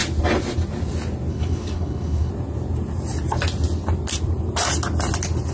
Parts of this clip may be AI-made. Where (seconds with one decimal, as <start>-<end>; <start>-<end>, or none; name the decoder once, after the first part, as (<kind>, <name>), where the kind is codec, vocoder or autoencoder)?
1.3-2.3 (codec, HILCodec)